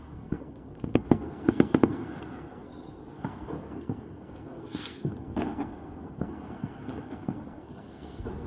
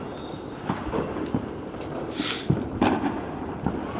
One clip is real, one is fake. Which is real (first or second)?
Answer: second